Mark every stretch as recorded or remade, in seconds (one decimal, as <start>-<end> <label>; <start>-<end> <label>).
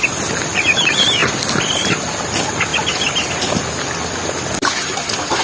0.0-5.4 recorded